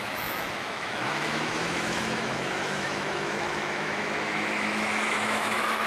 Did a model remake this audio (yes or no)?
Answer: yes